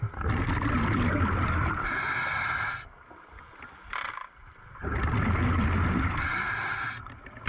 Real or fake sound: real